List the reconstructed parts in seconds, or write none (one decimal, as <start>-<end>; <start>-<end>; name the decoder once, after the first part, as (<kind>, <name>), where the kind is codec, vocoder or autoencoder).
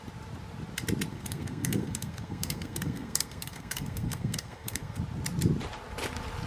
1.1-5.0 (codec, SNAC)